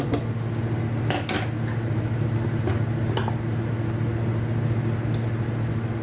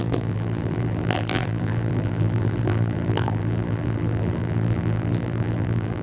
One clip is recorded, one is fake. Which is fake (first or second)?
second